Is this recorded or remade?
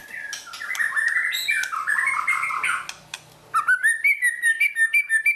recorded